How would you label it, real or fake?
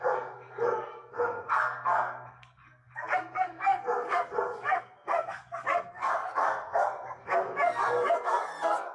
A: fake